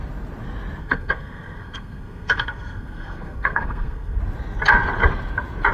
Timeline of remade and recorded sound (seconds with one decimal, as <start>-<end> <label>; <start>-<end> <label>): 0.0-0.8 recorded; 0.8-4.2 remade; 4.2-5.7 recorded